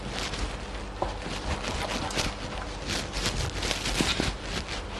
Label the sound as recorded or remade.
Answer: recorded